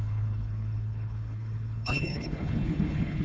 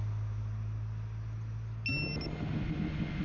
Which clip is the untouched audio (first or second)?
second